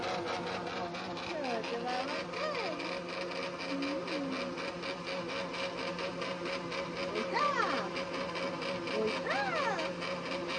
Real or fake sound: real